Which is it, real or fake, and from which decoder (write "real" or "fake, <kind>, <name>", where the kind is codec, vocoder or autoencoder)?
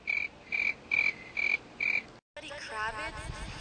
real